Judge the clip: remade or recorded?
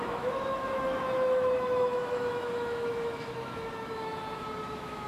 remade